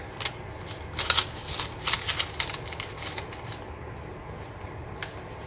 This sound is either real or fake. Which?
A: real